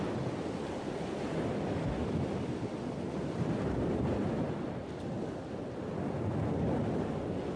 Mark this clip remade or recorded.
recorded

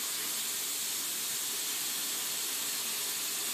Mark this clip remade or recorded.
recorded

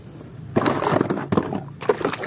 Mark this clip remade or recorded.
recorded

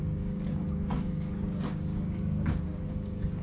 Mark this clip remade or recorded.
remade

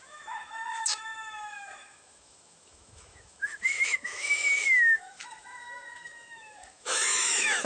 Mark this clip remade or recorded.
remade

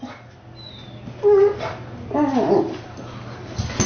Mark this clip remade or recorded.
recorded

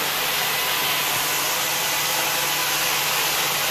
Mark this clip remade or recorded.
recorded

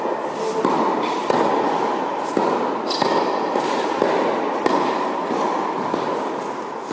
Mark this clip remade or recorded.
recorded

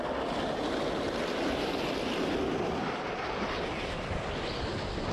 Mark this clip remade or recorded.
recorded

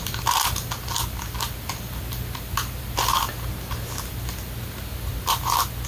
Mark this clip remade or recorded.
recorded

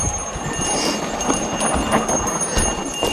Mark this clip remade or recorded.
recorded